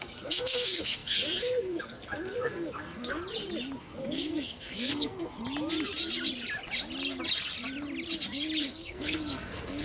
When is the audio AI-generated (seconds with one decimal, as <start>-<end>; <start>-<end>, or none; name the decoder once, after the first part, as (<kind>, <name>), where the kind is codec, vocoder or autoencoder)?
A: 0.0-3.2 (codec, SNAC); 3.8-5.4; 8.6-9.8

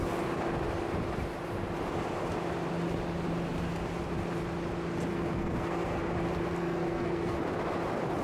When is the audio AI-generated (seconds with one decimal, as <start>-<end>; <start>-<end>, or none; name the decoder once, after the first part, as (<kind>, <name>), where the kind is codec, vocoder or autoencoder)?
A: 5.1-6.0 (codec, SNAC); 6.6-7.4